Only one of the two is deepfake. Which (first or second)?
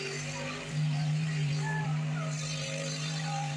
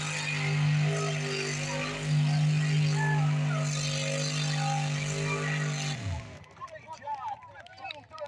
first